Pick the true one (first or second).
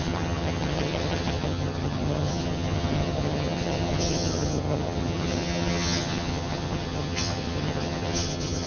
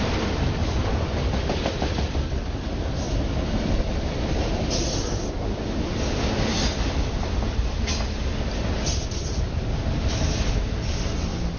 second